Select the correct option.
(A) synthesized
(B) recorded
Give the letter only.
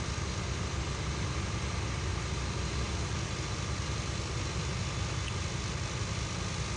B